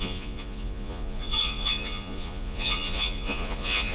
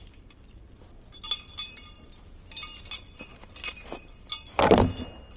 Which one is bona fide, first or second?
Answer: second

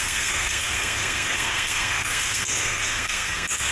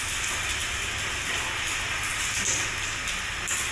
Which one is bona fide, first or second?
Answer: second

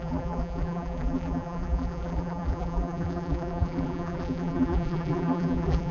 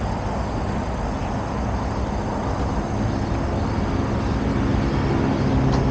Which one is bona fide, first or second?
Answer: second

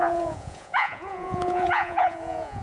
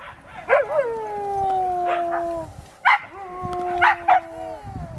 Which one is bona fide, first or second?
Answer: second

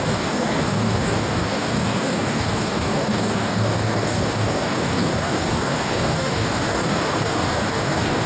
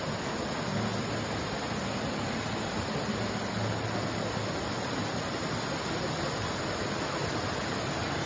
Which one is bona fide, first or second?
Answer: second